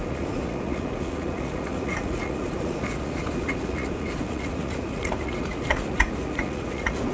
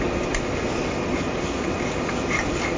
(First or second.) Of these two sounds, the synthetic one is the first